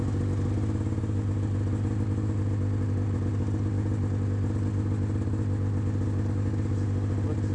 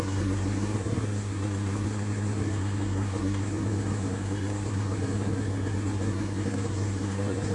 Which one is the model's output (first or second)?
second